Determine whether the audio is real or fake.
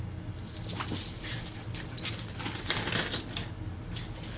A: real